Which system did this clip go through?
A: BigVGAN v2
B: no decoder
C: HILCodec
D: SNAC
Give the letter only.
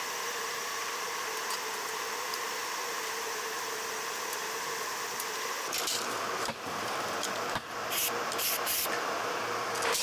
A